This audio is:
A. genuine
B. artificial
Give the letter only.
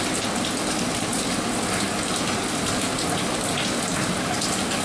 A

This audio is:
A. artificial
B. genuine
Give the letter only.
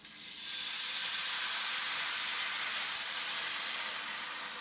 A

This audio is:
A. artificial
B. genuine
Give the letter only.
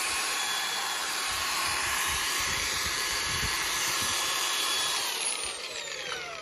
A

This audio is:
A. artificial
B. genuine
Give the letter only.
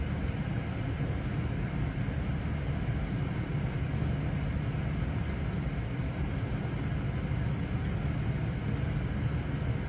B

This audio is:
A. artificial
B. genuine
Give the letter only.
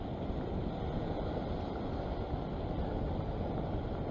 B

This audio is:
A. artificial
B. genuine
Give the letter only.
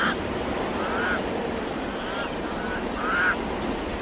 A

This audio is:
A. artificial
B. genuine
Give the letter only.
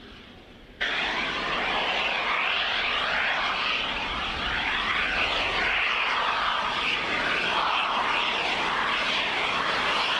A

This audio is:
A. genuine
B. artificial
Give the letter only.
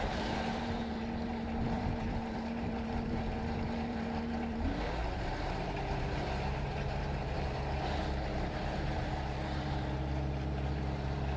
B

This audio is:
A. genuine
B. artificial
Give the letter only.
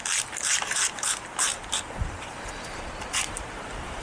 B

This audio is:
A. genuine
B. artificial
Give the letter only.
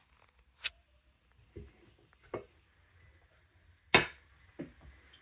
A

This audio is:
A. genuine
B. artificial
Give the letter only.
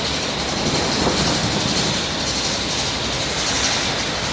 A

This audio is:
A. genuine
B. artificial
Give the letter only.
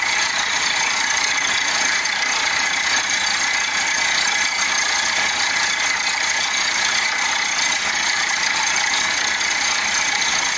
B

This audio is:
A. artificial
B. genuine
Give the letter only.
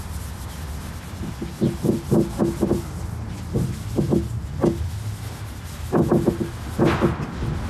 B